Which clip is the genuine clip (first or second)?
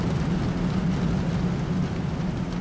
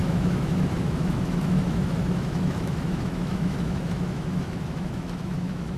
first